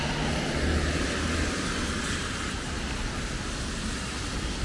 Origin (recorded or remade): recorded